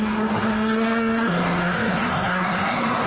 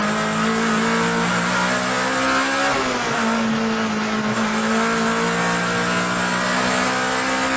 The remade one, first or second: first